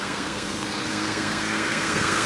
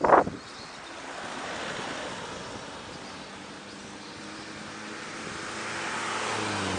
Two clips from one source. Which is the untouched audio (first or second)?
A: second